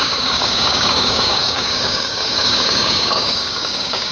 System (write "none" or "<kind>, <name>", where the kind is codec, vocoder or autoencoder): codec, DAC